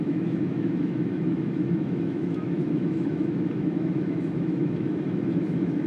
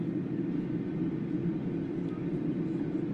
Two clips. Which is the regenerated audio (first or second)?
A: first